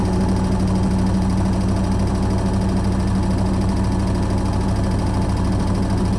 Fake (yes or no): no